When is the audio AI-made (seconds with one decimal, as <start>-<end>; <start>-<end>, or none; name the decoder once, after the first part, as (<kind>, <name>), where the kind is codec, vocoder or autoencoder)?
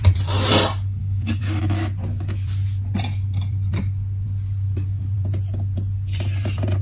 1.0-1.6 (codec, DAC)